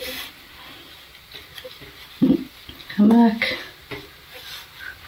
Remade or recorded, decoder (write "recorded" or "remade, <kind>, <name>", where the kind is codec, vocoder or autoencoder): recorded